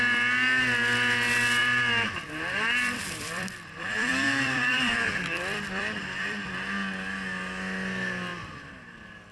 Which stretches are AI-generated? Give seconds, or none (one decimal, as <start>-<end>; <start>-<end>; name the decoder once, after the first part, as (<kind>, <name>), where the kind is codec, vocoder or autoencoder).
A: 1.6-6.5 (vocoder, BigVGAN v2); 8.3-9.3